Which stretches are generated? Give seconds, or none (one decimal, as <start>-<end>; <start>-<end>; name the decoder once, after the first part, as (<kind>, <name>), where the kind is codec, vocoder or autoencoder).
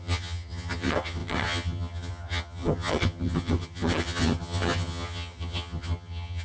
0.0-6.4 (vocoder, HiFi-GAN)